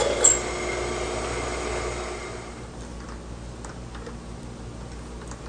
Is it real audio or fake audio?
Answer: real